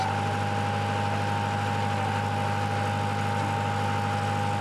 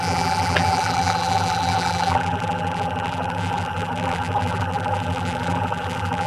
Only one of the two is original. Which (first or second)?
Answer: first